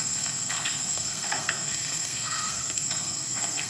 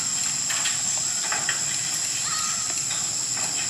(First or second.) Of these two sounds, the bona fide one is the second